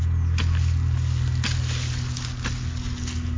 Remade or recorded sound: recorded